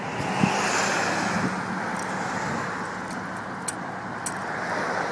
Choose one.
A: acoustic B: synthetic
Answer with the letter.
A